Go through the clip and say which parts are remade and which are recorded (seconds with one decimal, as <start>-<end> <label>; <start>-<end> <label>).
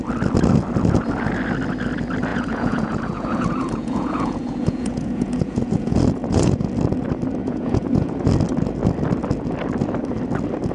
0.0-2.3 recorded; 2.3-6.7 remade; 6.7-7.4 recorded; 7.4-8.3 remade; 8.3-10.7 recorded